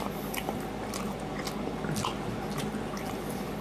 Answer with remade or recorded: recorded